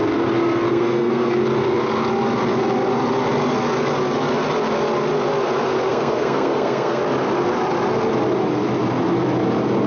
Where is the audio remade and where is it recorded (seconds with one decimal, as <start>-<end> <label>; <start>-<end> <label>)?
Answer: 0.0-0.7 recorded; 0.7-1.3 remade; 1.3-5.9 recorded; 5.9-7.0 remade; 7.0-9.9 recorded